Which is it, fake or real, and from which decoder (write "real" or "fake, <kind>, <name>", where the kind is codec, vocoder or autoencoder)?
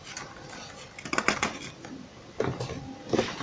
real